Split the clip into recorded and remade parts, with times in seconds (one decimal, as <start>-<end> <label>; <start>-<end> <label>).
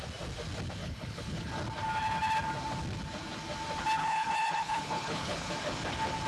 0.0-0.8 recorded; 0.8-1.5 remade; 1.5-4.0 recorded; 4.0-5.5 remade; 5.5-6.3 recorded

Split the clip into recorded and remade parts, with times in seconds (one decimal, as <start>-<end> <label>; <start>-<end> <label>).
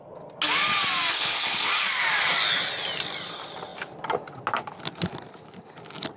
0.0-1.1 recorded; 1.1-1.7 remade; 1.7-6.2 recorded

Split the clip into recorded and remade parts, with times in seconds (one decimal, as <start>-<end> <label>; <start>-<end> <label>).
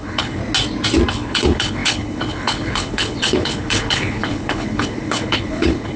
0.0-0.4 remade; 0.4-1.1 recorded; 1.1-6.0 remade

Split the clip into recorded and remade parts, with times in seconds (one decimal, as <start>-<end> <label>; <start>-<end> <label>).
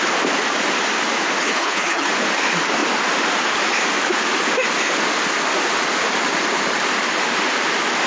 0.0-1.4 recorded; 1.4-2.1 remade; 2.1-8.1 recorded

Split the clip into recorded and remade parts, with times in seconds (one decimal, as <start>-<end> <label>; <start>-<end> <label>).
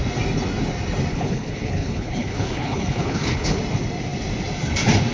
0.0-1.1 recorded; 1.1-3.6 remade; 3.6-5.1 recorded